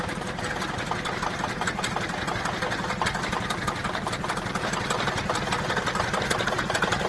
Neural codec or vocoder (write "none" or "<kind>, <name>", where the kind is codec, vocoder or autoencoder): none